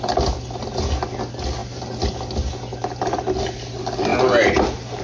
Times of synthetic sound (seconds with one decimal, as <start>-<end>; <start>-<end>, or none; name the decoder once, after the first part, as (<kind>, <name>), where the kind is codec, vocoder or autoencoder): none